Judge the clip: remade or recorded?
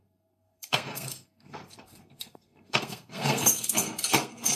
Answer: remade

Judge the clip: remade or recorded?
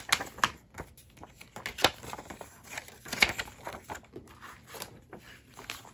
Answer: recorded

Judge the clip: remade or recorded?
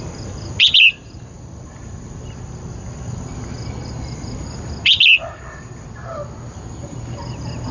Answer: recorded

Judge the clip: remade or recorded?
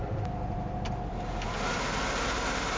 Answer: recorded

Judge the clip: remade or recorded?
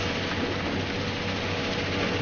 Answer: recorded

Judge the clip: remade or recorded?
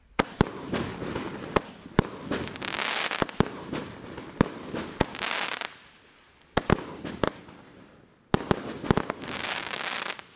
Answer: recorded